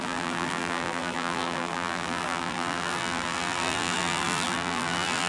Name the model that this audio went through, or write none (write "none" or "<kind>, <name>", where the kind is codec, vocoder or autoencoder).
vocoder, BigVGAN v2